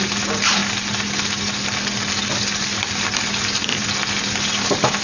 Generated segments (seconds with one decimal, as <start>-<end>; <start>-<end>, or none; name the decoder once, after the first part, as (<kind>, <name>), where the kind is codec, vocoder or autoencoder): none